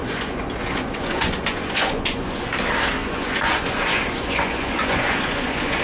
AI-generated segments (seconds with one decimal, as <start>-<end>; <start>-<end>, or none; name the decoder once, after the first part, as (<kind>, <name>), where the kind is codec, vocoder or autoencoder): 0.0-2.5 (vocoder, Vocos); 3.0-5.8